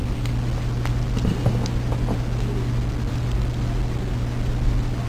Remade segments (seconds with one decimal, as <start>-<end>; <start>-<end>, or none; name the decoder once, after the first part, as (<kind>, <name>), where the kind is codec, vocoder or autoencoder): none